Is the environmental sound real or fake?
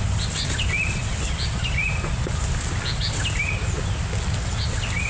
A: real